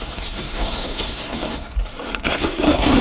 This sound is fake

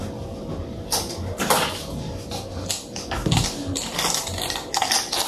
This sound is real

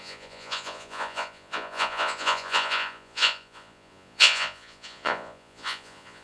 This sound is fake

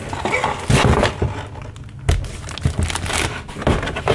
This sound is real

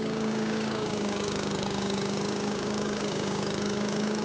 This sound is fake